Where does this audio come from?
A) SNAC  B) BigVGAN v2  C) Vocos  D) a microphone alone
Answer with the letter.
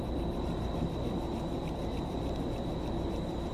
B